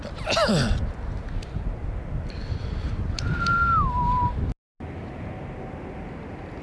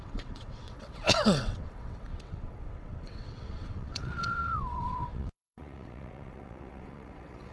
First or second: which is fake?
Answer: second